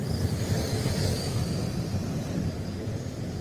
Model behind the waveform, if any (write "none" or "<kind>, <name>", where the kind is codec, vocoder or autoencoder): none